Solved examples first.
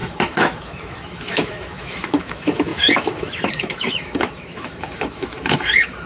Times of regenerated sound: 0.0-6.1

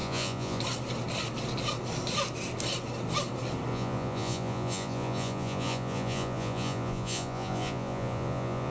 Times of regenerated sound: 0.0-0.6; 3.7-8.7

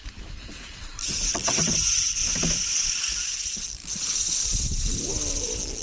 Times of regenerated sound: 0.0-2.9; 3.8-5.3

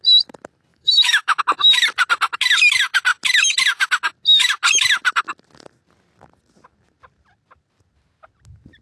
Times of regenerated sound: 0.7-1.4

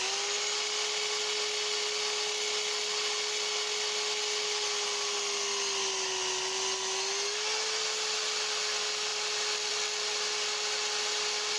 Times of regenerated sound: none

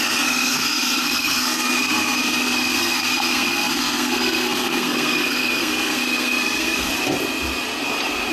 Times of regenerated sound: 0.0-6.9

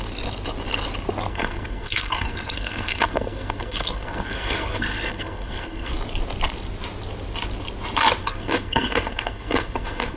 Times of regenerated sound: 1.3-5.9; 8.2-10.2